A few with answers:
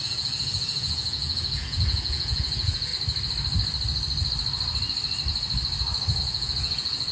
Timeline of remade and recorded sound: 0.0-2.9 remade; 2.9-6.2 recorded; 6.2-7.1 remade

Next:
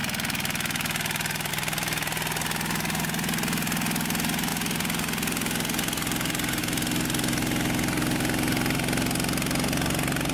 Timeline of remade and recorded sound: 0.0-10.3 recorded

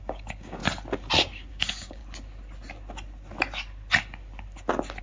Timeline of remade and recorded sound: 0.0-0.6 remade; 0.6-1.5 recorded; 1.5-2.0 remade; 2.0-5.0 recorded

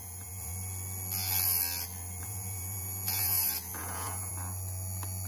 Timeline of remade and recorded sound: 0.0-0.5 remade; 0.5-2.2 recorded; 2.2-4.3 remade; 4.3-5.3 recorded

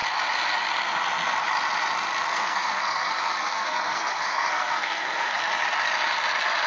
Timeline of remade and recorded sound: 0.0-2.3 recorded; 2.3-5.4 remade; 5.4-6.7 recorded

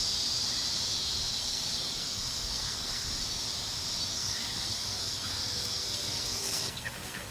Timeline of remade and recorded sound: 0.0-1.3 recorded; 1.3-3.1 remade; 3.1-4.1 recorded; 4.1-7.3 remade

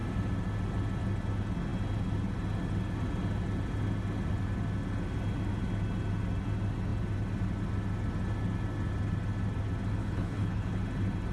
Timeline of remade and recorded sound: 0.0-10.0 recorded; 10.0-10.8 remade; 10.8-11.3 recorded

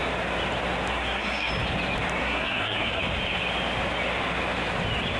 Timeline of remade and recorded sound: 0.0-0.9 recorded; 0.9-1.5 remade; 1.5-2.2 recorded; 2.2-3.0 remade; 3.0-5.2 recorded